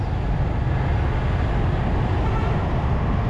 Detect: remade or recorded recorded